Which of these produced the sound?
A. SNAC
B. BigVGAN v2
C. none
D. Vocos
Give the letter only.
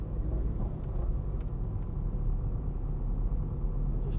C